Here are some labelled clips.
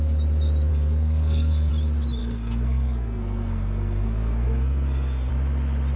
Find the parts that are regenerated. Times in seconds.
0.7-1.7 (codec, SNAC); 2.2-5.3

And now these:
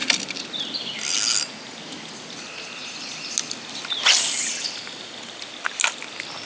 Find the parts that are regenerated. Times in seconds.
none

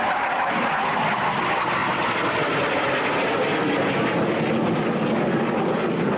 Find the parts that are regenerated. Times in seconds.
none

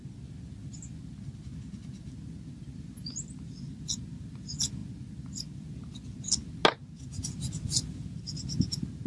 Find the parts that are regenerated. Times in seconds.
none

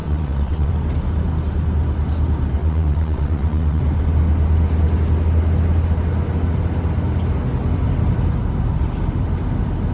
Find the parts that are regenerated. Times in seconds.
0.0-0.7 (vocoder, WaveNeXt); 2.6-3.8